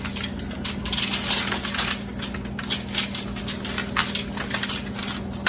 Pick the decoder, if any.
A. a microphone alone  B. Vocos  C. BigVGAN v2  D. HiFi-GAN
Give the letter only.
A